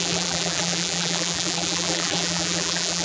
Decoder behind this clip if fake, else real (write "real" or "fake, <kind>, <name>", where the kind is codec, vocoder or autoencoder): fake, vocoder, BigVGAN v2